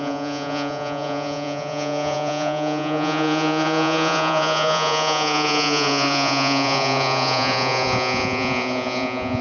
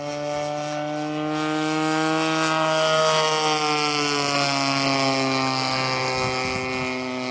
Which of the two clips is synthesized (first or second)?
first